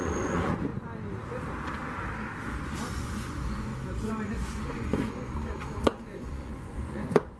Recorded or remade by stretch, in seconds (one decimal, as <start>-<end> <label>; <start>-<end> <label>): 0.0-0.7 remade; 0.7-2.9 recorded; 2.9-3.7 remade; 3.7-4.3 recorded; 4.3-7.4 remade